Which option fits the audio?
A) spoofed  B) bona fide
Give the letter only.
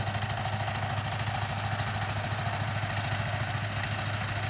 B